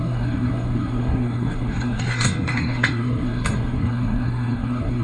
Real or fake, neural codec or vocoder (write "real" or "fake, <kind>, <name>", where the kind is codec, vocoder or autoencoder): fake, codec, SNAC